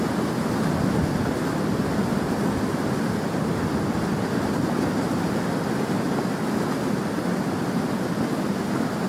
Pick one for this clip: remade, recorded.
recorded